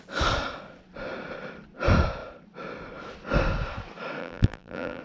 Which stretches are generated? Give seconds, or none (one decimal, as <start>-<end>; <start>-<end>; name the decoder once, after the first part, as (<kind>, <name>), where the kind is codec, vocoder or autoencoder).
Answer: 4.2-5.0 (vocoder, BigVGAN v2)